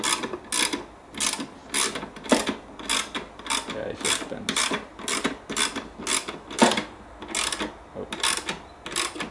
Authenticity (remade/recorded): recorded